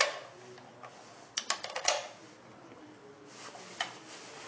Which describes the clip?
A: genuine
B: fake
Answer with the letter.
A